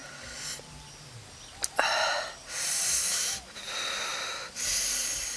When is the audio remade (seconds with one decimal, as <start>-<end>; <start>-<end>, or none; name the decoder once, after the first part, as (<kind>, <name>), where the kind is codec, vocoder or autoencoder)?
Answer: none